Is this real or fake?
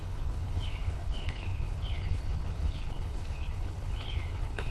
fake